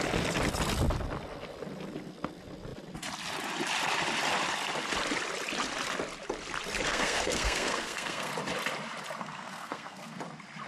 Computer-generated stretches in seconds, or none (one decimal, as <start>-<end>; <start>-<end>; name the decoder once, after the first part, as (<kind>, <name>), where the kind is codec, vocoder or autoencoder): 6.9-8.3 (codec, SNAC); 9.2-10.2